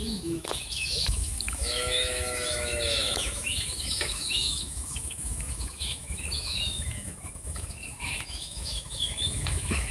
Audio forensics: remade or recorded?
remade